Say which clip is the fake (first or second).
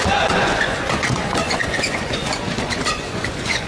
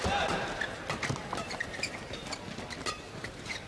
first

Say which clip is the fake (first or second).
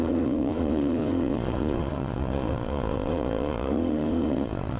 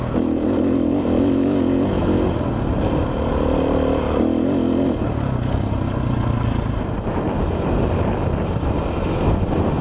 first